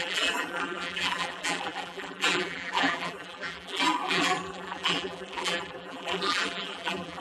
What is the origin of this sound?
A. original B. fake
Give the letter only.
B